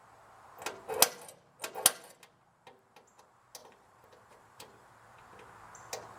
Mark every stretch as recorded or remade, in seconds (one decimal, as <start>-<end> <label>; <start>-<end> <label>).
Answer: 0.0-3.6 recorded; 3.6-4.9 remade; 4.9-6.2 recorded